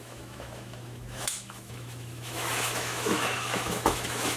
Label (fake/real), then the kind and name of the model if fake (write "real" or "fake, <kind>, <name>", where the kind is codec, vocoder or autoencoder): fake, autoencoder, DAC-VAE